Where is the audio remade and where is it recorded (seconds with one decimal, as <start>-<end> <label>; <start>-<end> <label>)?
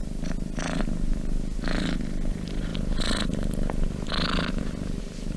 0.0-5.4 recorded